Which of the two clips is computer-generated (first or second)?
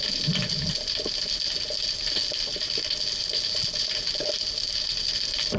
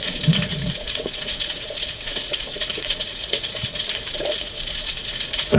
second